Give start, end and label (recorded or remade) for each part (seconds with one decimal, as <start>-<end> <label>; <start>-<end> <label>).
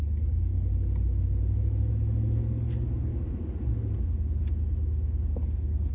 0.0-0.5 remade; 0.5-1.9 recorded; 1.9-3.1 remade; 3.1-5.3 recorded; 5.3-5.9 remade